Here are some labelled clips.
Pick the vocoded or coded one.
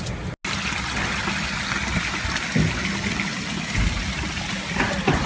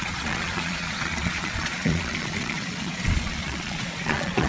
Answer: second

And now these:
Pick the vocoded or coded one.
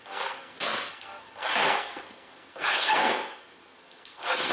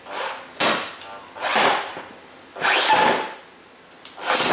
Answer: first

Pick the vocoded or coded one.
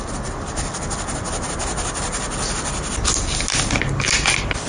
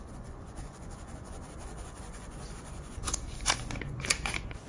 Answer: second